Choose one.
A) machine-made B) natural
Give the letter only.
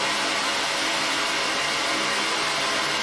B